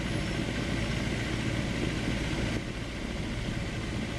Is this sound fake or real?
real